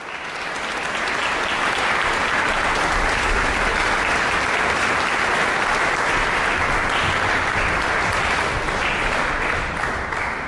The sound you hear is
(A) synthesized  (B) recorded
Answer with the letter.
B